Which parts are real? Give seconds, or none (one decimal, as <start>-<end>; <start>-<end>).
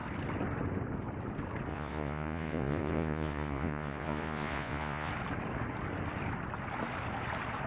0.0-1.7; 5.1-7.7